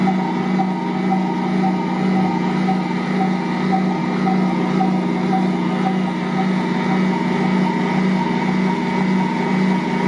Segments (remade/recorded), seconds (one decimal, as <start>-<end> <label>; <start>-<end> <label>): 0.0-10.1 recorded